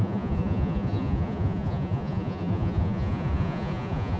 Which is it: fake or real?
fake